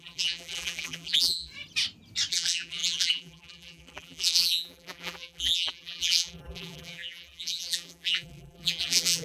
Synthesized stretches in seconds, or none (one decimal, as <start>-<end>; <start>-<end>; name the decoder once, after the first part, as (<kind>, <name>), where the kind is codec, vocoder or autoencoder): 0.0-1.5 (vocoder, BigVGAN v2); 2.3-9.2

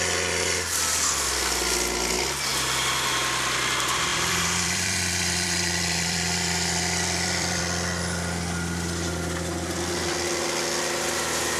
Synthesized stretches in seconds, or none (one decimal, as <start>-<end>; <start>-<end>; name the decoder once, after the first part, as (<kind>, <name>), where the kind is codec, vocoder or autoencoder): 4.1-7.6 (vocoder, BigVGAN v2)